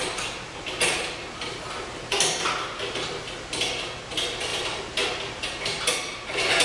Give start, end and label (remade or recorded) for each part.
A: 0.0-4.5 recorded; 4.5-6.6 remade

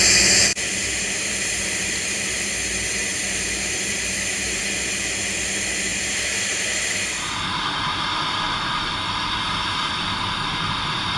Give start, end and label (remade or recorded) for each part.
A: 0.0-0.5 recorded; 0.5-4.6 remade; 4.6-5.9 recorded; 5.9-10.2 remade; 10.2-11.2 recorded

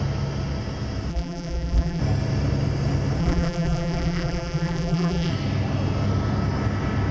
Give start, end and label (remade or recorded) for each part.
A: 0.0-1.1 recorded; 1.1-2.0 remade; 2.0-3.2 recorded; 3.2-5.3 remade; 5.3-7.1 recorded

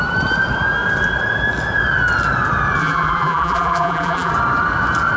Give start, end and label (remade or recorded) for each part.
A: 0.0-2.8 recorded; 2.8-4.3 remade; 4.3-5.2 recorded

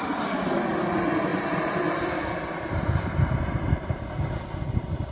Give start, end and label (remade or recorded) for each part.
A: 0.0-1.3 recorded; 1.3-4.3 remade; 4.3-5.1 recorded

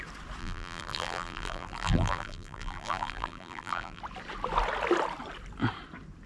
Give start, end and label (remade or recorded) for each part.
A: 0.0-0.4 recorded; 0.4-4.0 remade; 4.0-6.3 recorded

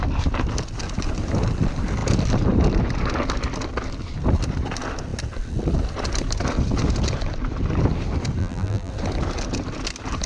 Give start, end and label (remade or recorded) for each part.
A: 0.0-8.4 recorded; 8.4-8.9 remade; 8.9-10.3 recorded

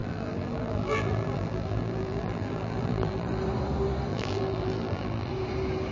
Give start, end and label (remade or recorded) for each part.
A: 0.0-3.4 remade; 3.4-4.1 recorded; 4.1-5.3 remade; 5.3-5.9 recorded